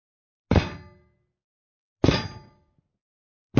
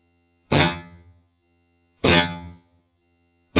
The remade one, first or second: second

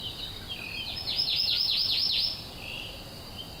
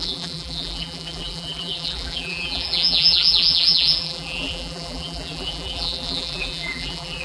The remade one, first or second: second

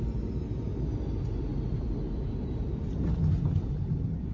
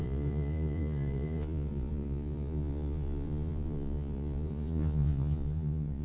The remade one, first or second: second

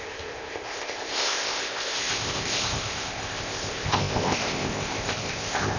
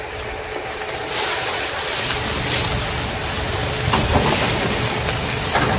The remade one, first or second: first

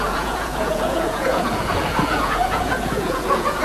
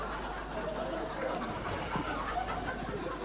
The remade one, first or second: first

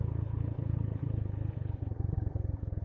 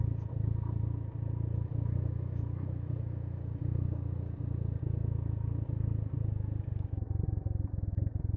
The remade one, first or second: first